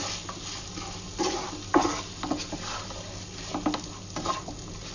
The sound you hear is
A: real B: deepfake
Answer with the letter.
A